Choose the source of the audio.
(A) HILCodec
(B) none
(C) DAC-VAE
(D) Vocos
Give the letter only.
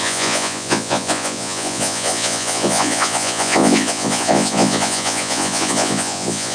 D